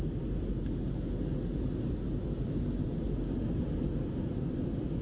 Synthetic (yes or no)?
no